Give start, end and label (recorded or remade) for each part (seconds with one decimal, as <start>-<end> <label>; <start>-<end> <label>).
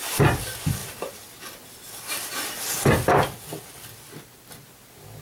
0.0-5.2 recorded